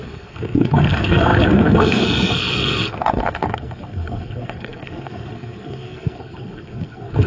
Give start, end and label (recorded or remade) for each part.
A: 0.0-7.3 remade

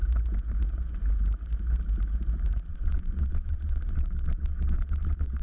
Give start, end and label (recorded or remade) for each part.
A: 0.0-2.7 recorded; 2.7-5.4 remade

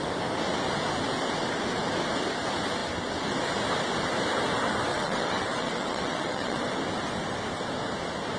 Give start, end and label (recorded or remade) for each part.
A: 0.0-4.9 recorded; 4.9-6.6 remade; 6.6-8.4 recorded

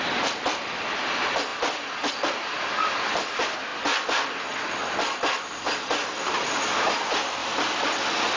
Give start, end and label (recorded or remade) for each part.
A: 0.0-3.7 recorded; 3.7-4.4 remade; 4.4-7.4 recorded; 7.4-8.4 remade

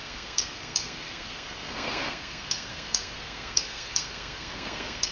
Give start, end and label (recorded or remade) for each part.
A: 0.0-5.1 remade